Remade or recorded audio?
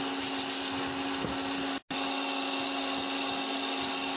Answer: recorded